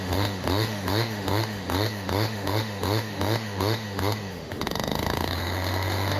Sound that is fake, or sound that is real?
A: fake